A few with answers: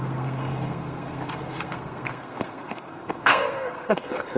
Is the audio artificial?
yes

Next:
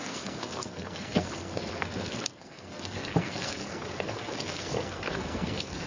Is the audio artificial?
yes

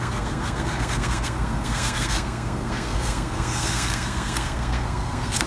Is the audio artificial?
yes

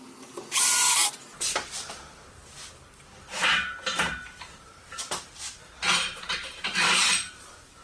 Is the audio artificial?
yes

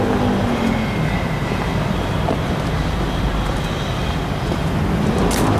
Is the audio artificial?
no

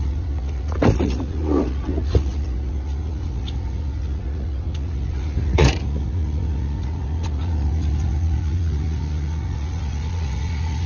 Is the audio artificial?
yes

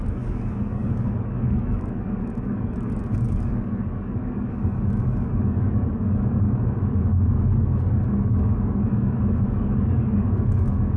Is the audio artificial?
yes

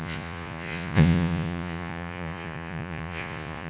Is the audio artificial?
yes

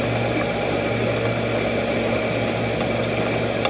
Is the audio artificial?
no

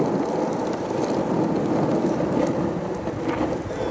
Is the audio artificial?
no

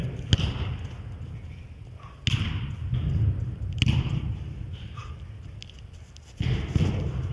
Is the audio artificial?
no